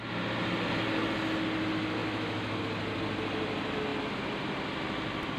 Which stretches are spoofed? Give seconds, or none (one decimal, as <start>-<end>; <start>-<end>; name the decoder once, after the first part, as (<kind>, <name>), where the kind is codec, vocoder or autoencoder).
2.0-2.6 (autoencoder, DAC-VAE)